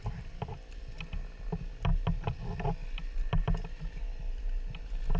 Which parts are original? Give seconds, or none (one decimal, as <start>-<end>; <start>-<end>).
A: 0.0-5.2